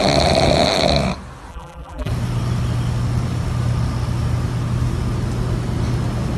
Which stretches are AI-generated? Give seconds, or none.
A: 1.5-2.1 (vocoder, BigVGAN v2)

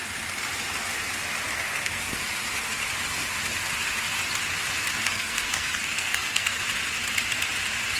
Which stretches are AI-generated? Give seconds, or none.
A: 1.5-2.3 (codec, SNAC); 5.0-6.6

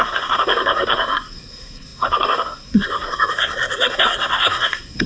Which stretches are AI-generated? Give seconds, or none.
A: 0.0-5.1 (codec, SNAC)